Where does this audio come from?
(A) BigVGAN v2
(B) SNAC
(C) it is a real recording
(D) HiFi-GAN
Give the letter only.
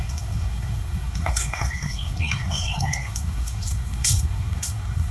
B